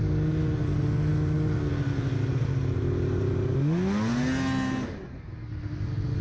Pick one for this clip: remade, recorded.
recorded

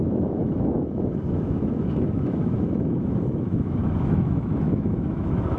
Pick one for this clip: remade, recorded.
remade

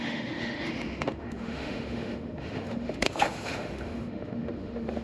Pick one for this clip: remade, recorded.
remade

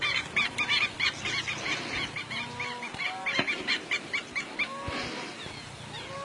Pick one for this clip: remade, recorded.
recorded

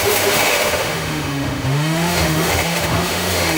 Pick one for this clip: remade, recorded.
remade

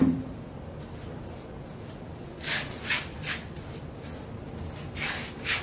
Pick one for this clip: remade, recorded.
recorded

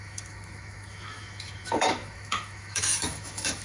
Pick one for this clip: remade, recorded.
remade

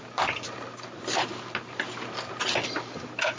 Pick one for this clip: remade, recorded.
recorded